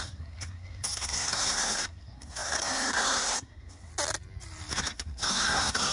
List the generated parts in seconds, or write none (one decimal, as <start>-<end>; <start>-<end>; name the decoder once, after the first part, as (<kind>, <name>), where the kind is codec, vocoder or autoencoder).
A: 0.0-3.9 (codec, SNAC); 4.7-5.9